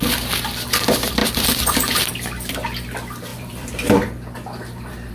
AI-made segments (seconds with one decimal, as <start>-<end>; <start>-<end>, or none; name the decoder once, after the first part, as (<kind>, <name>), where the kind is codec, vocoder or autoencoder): 1.2-2.1 (vocoder, BigVGAN v2); 3.3-5.1